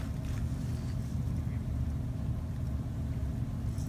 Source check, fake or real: real